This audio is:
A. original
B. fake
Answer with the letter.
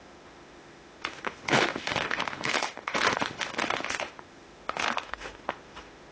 B